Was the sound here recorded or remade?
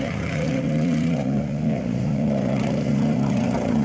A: remade